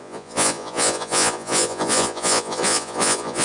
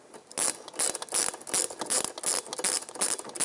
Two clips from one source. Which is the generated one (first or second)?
first